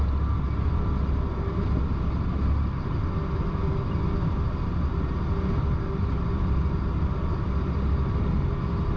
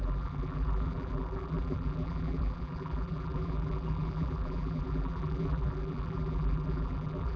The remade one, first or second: second